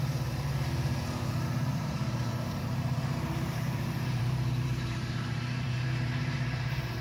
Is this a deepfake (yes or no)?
yes